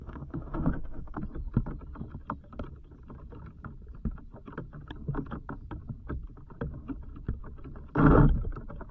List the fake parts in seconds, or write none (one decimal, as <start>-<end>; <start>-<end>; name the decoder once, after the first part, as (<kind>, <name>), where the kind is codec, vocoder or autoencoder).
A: 0.0-1.2 (autoencoder, DAC-VAE)

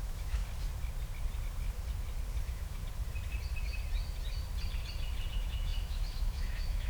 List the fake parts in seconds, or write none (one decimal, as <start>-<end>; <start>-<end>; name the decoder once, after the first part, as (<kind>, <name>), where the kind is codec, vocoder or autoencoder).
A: 0.0-0.4 (autoencoder, DAC-VAE); 2.4-2.8; 5.3-6.9

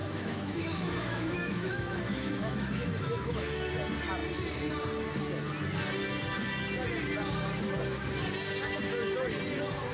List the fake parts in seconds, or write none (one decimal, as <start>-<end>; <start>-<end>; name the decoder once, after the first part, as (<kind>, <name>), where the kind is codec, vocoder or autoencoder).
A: 0.0-3.7 (autoencoder, DAC-VAE)

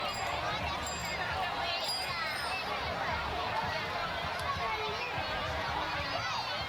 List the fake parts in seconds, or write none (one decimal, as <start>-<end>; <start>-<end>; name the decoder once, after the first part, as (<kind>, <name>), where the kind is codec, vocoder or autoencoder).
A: none